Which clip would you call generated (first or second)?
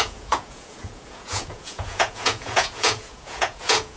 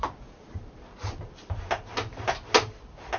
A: first